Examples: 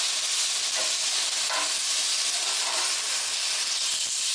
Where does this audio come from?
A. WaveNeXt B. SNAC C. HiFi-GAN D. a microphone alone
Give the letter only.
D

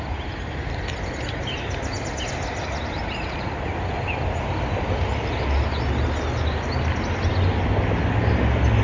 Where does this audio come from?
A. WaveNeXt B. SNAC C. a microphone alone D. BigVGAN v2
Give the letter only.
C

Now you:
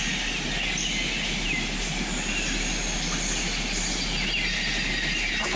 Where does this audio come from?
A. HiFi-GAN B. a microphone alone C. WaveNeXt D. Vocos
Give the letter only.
B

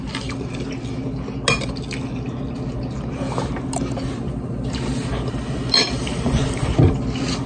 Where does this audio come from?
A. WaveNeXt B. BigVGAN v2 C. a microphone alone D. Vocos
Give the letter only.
C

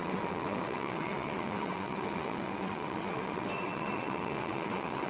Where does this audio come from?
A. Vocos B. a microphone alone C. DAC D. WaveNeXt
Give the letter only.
D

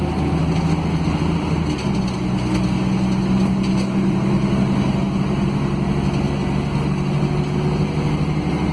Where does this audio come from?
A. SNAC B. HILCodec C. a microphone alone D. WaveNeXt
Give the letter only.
C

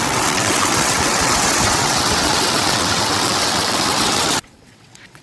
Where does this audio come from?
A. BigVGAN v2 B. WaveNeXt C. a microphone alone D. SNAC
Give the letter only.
B